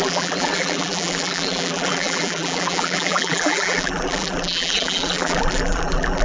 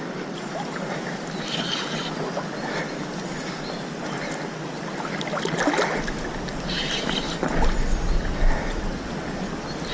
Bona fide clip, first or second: second